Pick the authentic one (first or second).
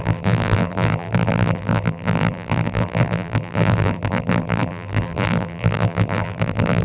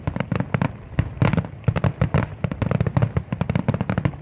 second